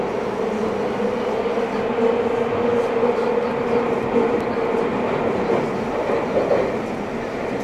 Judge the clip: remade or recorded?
recorded